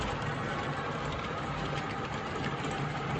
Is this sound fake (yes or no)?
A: yes